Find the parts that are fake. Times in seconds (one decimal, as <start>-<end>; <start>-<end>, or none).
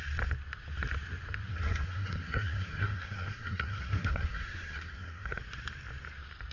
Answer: 1.5-5.4